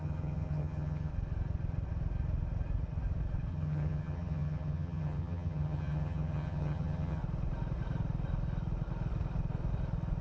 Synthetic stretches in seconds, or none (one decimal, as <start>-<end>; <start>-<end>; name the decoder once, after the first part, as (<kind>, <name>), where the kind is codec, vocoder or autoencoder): 0.0-1.1 (vocoder, HiFi-GAN); 3.5-7.2